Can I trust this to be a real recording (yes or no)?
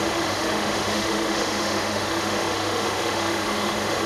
no